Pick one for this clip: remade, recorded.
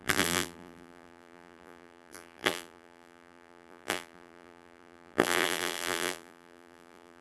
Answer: remade